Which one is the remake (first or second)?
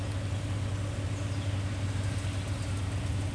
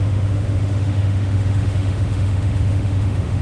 second